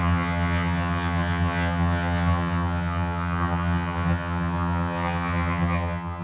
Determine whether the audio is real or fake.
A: fake